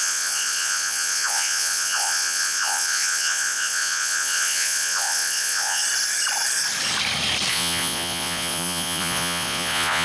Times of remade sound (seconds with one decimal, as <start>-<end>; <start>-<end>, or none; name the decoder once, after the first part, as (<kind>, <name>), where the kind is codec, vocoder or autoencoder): 0.0-5.8 (vocoder, Vocos); 7.5-10.0

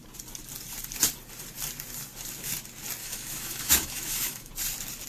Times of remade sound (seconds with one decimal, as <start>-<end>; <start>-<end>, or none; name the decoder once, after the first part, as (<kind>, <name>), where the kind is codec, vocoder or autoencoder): 3.0-4.5 (autoencoder, DAC-VAE)

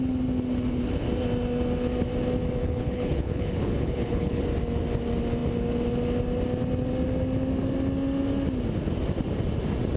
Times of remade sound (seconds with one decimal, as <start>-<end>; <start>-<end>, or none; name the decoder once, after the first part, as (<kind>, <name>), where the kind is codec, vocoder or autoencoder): 2.6-4.4 (codec, HILCodec)

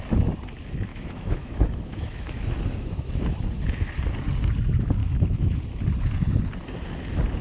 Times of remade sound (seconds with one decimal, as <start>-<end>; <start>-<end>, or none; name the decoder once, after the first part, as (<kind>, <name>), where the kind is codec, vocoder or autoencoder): 0.9-3.1 (autoencoder, DAC-VAE); 5.0-5.6